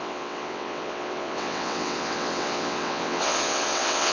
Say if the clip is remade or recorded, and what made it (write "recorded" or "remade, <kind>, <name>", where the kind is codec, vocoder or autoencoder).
remade, vocoder, WaveNeXt